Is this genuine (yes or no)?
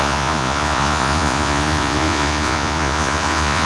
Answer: no